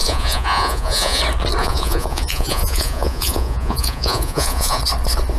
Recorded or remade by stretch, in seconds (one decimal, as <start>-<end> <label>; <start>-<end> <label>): 0.0-1.2 remade; 1.2-1.6 recorded; 1.6-4.8 remade; 4.8-5.4 recorded